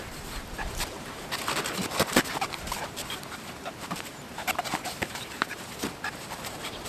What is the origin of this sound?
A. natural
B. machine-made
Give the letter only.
B